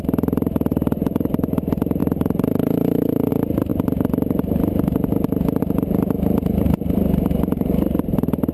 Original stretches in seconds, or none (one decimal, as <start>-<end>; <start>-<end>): 0.0-0.7; 1.3-2.0; 3.3-8.5